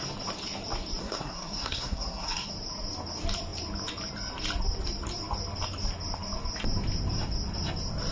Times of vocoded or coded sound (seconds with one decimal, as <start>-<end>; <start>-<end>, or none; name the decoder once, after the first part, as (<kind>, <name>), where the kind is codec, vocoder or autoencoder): 1.0-2.5 (codec, SNAC)